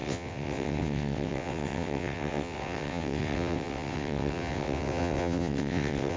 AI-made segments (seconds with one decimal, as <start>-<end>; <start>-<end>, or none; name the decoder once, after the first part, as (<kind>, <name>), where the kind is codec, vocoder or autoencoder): 0.0-6.2 (vocoder, WaveNeXt)